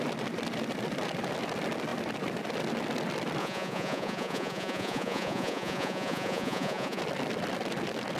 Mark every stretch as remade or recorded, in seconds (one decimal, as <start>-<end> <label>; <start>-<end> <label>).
0.0-3.4 recorded; 3.4-7.0 remade; 7.0-8.2 recorded